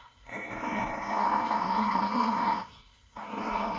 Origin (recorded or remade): remade